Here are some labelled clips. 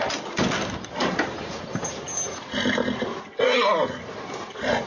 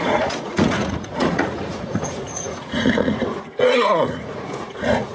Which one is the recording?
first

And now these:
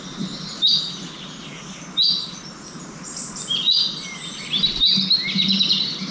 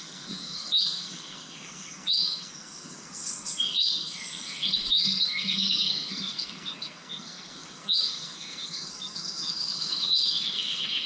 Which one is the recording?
first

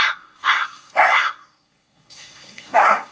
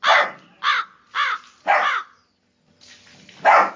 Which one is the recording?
second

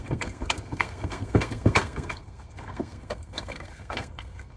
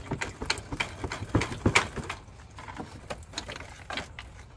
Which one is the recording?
second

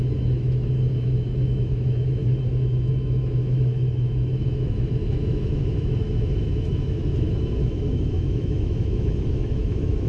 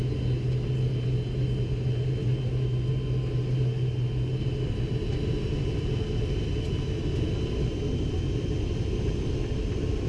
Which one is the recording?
second